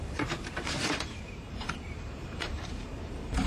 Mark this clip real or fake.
fake